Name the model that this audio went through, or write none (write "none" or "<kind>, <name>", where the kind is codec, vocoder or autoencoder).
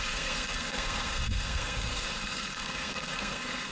codec, SNAC